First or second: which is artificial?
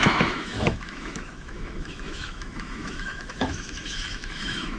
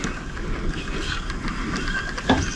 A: first